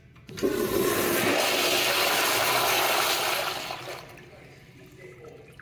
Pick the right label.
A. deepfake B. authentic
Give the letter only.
B